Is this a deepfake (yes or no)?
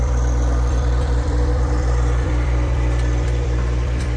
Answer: yes